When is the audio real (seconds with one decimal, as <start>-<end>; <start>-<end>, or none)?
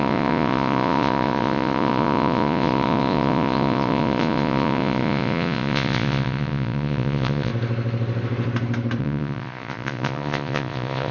7.5-9.0